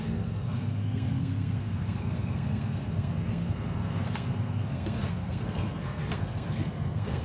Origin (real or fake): fake